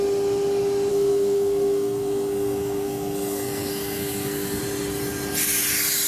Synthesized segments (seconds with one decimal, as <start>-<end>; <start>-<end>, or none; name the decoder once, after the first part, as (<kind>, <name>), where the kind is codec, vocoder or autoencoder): 0.9-4.6 (codec, SNAC)